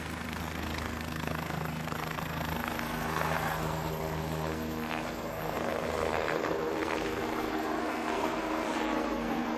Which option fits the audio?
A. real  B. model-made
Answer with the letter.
B